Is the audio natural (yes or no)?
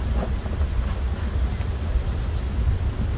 yes